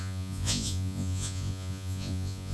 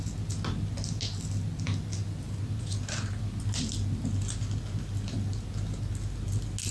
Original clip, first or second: second